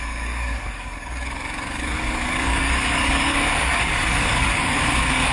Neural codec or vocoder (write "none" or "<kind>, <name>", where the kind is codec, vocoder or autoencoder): codec, DAC